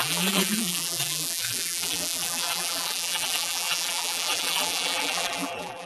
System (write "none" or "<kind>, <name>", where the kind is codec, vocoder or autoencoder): vocoder, BigVGAN v2